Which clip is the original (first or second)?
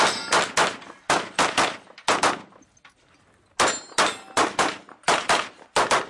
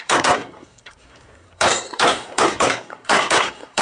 first